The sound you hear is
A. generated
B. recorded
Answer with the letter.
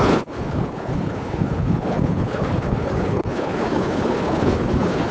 A